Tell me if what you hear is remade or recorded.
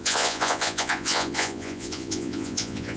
remade